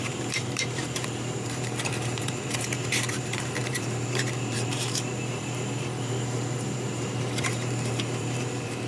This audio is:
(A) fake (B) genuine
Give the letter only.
A